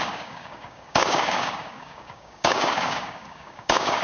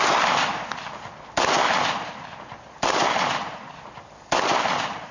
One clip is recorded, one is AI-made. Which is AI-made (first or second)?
first